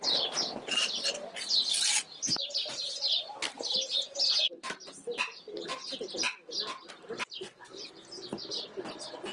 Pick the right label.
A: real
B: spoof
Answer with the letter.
A